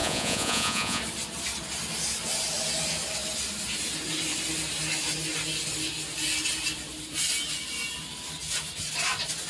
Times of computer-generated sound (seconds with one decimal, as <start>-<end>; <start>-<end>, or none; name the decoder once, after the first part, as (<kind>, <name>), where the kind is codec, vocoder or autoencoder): 0.0-1.0 (vocoder, Vocos)